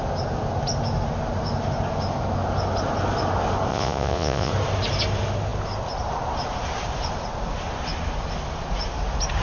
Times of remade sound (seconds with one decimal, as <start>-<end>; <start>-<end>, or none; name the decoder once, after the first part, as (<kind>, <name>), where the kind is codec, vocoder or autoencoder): 3.7-4.5 (vocoder, Vocos)